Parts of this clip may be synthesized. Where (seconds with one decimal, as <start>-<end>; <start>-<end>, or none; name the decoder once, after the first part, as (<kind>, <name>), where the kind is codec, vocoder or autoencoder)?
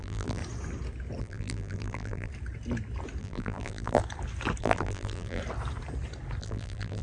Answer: 0.0-0.4 (vocoder, BigVGAN v2); 1.2-2.3; 3.2-4.0; 4.6-5.4; 6.4-7.0